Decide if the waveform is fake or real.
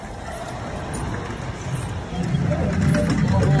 real